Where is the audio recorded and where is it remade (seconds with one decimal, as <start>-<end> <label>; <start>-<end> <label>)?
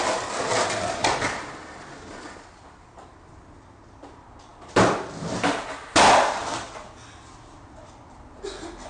0.0-8.9 recorded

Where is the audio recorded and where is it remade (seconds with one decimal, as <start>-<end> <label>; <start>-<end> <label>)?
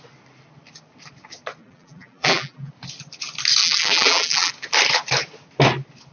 0.0-1.6 recorded; 1.6-2.7 remade; 2.7-3.6 recorded; 3.6-4.5 remade; 4.5-6.1 recorded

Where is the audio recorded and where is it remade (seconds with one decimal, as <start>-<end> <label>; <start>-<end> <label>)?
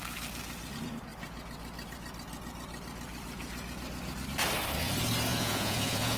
0.0-5.3 recorded; 5.3-6.2 remade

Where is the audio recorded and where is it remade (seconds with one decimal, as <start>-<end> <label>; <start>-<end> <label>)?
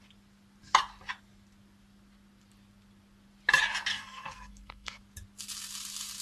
0.0-3.9 recorded; 3.9-5.0 remade; 5.0-6.2 recorded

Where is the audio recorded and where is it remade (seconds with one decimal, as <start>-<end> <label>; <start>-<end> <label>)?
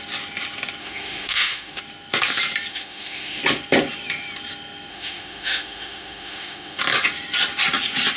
0.0-0.8 recorded; 0.8-1.8 remade; 1.8-2.7 recorded; 2.7-3.4 remade; 3.4-4.9 recorded; 4.9-6.8 remade; 6.8-8.2 recorded